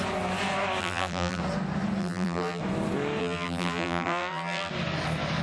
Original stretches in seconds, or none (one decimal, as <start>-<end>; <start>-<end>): 0.0-0.8; 1.4-2.0; 2.6-3.2; 4.7-5.4